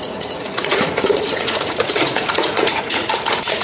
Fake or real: fake